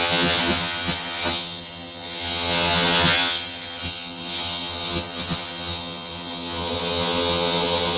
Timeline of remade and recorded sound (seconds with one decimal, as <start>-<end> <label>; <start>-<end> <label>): 0.0-8.0 remade